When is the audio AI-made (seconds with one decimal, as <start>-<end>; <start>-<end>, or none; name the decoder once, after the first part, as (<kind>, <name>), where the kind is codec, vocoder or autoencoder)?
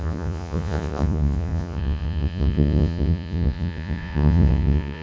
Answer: 0.0-5.0 (vocoder, Vocos)